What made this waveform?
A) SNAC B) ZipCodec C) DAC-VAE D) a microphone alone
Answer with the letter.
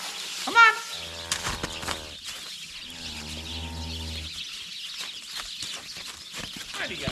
D